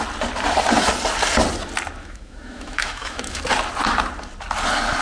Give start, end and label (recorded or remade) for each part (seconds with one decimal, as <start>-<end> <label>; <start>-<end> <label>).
0.0-2.0 recorded; 2.0-3.4 remade; 3.4-5.0 recorded